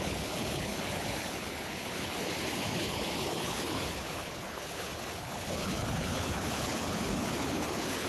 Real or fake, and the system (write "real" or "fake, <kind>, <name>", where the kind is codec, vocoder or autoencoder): fake, codec, HILCodec